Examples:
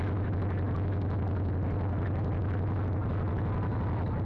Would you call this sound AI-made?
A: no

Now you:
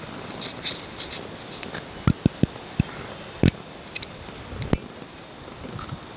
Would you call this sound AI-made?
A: no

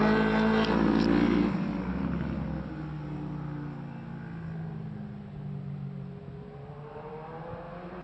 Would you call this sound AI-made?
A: no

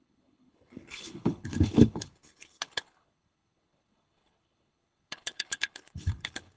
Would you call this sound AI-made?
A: yes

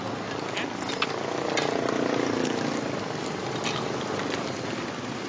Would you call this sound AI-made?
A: no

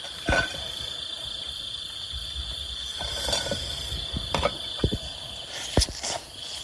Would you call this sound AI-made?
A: no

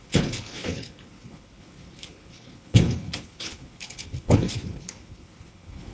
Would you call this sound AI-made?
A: yes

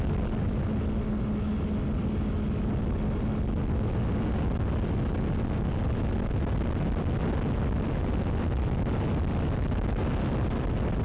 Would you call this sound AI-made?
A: no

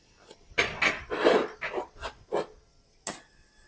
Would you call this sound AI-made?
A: no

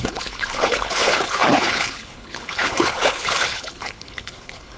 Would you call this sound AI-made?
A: yes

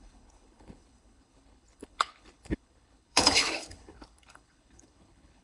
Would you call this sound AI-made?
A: yes